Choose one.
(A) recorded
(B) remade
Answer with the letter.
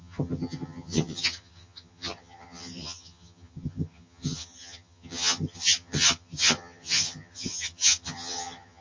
B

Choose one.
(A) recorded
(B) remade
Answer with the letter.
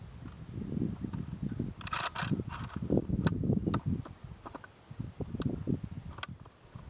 A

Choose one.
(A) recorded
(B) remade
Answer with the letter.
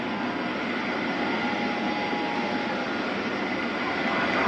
A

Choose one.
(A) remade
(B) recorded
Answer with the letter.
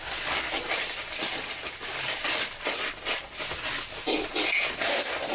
B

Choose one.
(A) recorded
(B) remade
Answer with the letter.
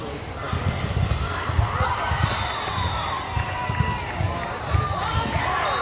A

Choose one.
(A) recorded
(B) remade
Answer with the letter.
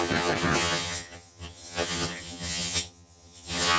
B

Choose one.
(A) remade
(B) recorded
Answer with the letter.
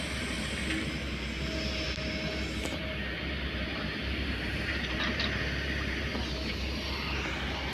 B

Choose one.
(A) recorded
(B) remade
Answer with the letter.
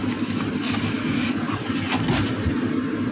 A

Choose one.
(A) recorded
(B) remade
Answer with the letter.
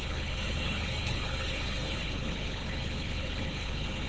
B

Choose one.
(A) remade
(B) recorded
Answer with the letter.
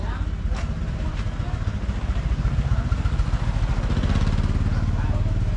B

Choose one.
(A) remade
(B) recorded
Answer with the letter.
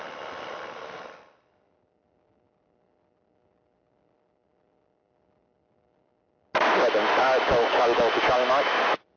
B